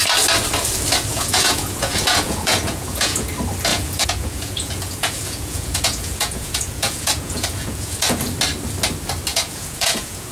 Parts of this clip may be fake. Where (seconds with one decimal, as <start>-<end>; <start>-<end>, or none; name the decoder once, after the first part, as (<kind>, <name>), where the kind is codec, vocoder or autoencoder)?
1.1-3.3 (vocoder, Vocos); 3.7-8.2; 9.3-10.3